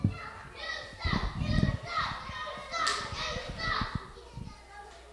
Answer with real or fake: real